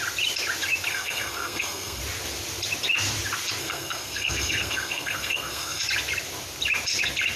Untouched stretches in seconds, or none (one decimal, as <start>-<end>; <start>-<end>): 0.0-0.9; 2.0-3.6; 5.8-7.4